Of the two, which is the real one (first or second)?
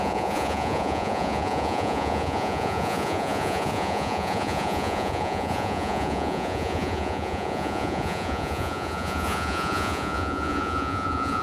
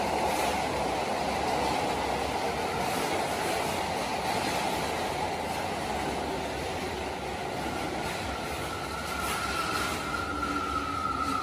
second